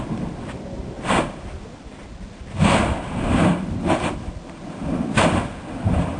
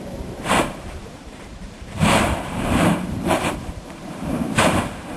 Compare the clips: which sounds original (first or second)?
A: first